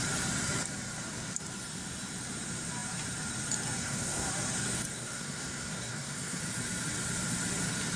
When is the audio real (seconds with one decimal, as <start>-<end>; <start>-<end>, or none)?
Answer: 0.0-3.8; 4.3-4.9; 6.4-8.0